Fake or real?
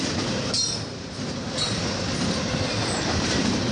real